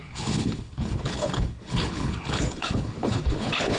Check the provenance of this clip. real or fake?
fake